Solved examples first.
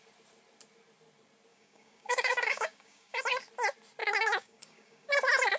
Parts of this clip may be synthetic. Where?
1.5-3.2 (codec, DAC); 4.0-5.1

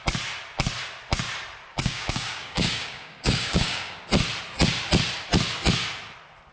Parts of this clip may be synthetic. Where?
1.7-4.0 (codec, DAC)